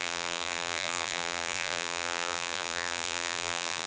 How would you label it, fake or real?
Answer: fake